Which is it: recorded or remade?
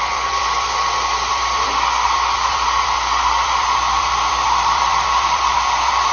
remade